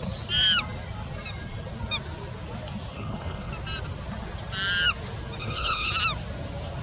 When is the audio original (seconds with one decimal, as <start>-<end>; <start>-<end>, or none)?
0.0-2.9; 3.5-5.4; 5.9-6.8